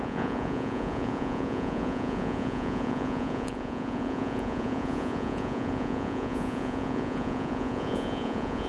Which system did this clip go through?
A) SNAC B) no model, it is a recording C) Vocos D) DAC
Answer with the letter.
C